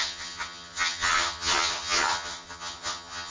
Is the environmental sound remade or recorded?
remade